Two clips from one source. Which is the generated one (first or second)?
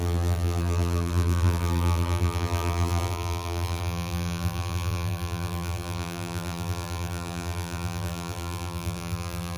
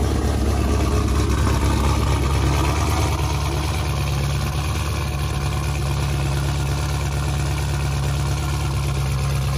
first